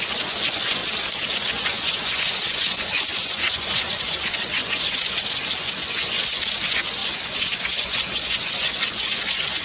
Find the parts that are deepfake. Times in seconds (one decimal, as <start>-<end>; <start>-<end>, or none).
0.0-0.8; 1.3-9.6